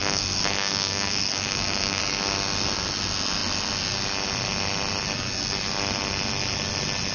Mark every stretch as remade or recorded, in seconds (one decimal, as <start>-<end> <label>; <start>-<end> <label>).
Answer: 0.0-2.0 remade; 2.0-7.1 recorded